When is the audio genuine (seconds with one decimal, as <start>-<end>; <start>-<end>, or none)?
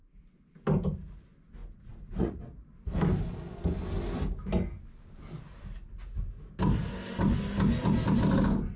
0.0-1.6; 2.4-8.8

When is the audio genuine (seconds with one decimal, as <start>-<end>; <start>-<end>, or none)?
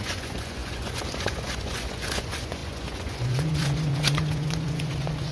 none